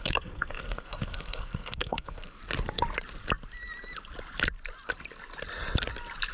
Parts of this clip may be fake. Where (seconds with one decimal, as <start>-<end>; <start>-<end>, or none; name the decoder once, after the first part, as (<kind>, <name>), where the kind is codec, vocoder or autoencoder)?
0.0-2.4 (codec, SNAC)

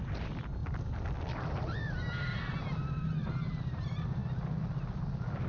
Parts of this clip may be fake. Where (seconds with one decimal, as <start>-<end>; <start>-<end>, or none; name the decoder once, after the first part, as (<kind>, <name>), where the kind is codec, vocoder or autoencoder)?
none

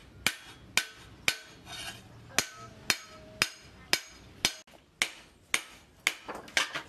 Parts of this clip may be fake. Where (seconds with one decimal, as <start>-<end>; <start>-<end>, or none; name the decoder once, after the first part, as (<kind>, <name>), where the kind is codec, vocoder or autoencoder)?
none

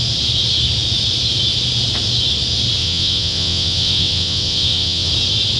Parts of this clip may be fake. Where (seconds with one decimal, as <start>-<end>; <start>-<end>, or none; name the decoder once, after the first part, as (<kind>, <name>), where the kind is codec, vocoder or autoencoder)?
2.8-5.1 (vocoder, WaveNeXt)

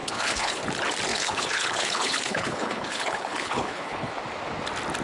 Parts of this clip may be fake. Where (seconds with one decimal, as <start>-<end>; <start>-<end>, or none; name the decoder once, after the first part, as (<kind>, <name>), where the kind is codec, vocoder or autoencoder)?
0.0-0.6 (codec, HILCodec); 1.1-4.1

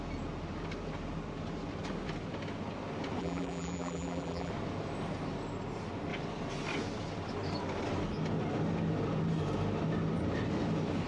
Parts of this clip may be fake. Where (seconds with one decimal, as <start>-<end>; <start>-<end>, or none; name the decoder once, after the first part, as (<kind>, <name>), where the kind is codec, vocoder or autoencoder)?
3.2-4.5 (vocoder, BigVGAN v2)

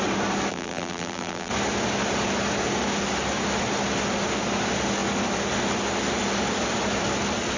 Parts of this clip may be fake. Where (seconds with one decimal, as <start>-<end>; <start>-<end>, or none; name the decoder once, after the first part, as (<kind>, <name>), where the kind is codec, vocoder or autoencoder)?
0.5-1.5 (vocoder, BigVGAN v2)